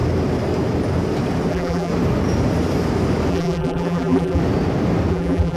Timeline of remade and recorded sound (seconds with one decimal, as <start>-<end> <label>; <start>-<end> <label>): 0.0-1.5 recorded; 1.5-1.9 remade; 1.9-3.3 recorded; 3.3-4.4 remade; 4.4-5.1 recorded; 5.1-5.6 remade